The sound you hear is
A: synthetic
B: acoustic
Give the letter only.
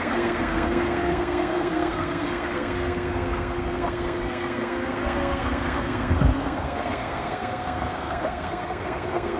A